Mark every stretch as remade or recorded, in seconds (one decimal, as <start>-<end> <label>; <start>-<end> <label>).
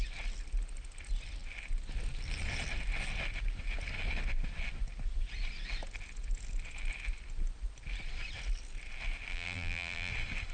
0.0-9.3 recorded; 9.3-10.1 remade; 10.1-10.5 recorded